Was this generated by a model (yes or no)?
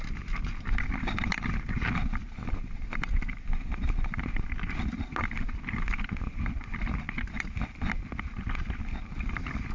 no